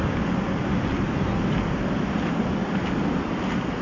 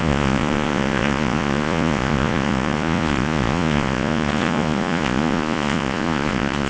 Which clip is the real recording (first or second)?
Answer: first